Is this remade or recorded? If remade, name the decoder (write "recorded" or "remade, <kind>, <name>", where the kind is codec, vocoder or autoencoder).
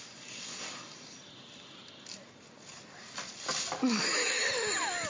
recorded